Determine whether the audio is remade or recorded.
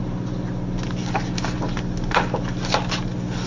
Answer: recorded